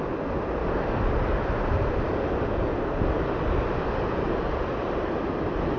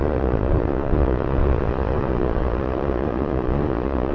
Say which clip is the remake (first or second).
second